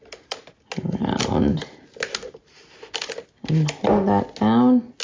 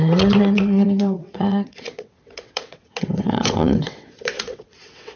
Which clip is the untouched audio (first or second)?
first